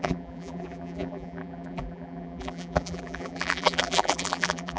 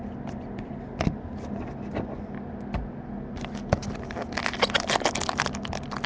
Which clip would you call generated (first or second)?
first